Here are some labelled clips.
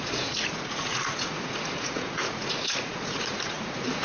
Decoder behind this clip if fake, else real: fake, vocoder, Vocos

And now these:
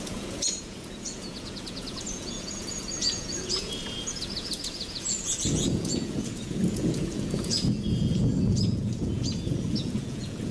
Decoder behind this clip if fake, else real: fake, vocoder, Vocos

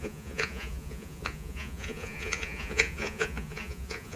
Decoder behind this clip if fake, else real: fake, vocoder, Vocos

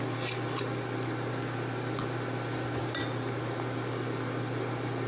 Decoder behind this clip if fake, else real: real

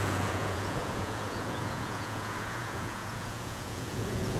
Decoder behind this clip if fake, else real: fake, vocoder, Vocos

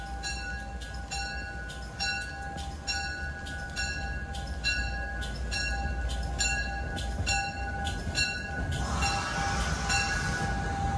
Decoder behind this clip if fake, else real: real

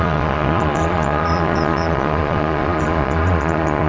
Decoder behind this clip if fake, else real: fake, vocoder, Vocos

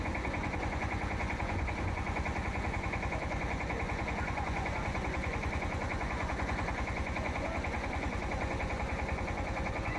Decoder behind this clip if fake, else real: fake, vocoder, Vocos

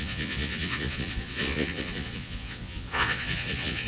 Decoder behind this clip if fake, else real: fake, vocoder, Vocos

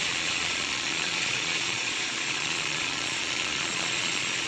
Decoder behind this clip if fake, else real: fake, vocoder, Vocos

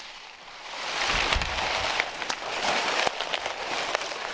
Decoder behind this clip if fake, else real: real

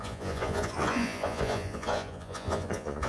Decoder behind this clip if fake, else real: fake, vocoder, Vocos